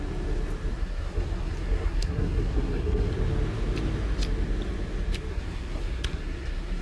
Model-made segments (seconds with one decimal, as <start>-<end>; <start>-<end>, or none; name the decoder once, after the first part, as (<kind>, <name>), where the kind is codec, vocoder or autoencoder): 0.7-3.1 (codec, SNAC); 5.3-6.8